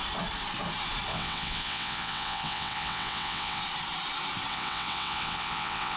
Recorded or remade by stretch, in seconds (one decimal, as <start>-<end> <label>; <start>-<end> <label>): 0.0-1.1 recorded; 1.1-3.6 remade; 3.6-4.5 recorded; 4.5-6.0 remade